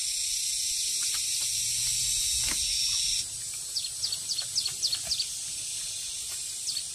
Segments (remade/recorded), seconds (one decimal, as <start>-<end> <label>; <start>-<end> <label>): 0.0-6.9 recorded